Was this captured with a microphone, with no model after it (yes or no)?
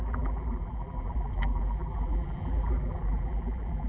no